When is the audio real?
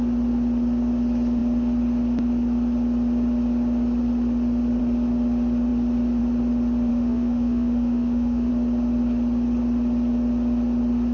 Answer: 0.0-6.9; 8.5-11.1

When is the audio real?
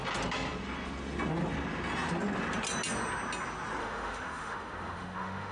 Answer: 0.0-3.8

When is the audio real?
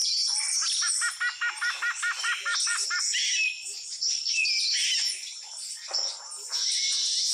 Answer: 0.0-7.3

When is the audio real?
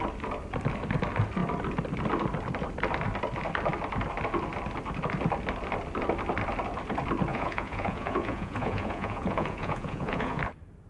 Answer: 0.0-7.3; 10.4-10.9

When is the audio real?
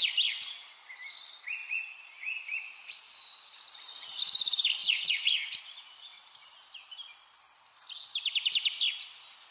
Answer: 0.0-1.6; 4.2-4.8; 5.6-9.5